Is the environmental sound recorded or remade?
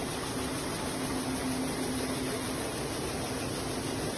recorded